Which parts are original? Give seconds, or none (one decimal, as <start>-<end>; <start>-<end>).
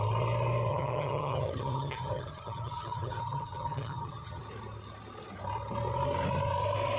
0.0-0.7; 4.4-7.0